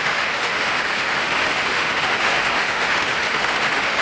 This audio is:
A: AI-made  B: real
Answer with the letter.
A